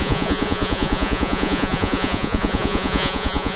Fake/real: fake